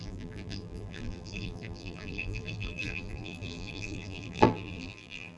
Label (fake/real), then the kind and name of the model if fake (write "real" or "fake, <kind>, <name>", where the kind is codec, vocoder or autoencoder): fake, vocoder, BigVGAN v2